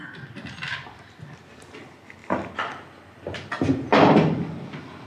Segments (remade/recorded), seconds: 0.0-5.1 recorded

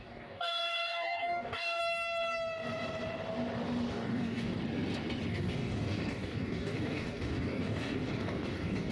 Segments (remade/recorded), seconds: 0.0-1.8 remade; 1.8-3.9 recorded; 3.9-4.6 remade; 4.6-5.3 recorded; 5.3-8.9 remade

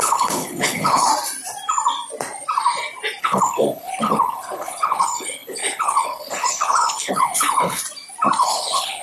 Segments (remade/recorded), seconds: 0.0-1.1 remade; 1.1-3.2 recorded; 3.2-7.8 remade; 7.8-8.4 recorded; 8.4-9.0 remade

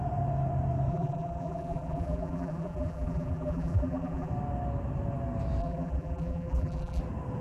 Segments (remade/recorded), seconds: 0.0-0.9 recorded; 0.9-4.3 remade; 4.3-5.6 recorded; 5.6-7.0 remade; 7.0-7.4 recorded

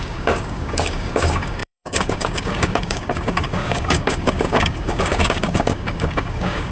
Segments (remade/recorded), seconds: 0.0-6.7 remade

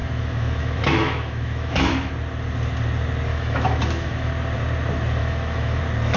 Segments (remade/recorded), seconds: 0.0-2.1 remade; 2.1-3.3 recorded; 3.3-4.3 remade; 4.3-5.2 recorded; 5.2-5.8 remade; 5.8-6.2 recorded